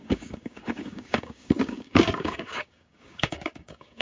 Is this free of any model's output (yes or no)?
no